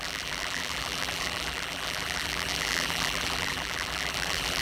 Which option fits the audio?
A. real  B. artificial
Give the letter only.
B